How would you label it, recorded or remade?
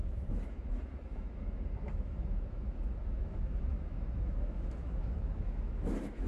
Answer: remade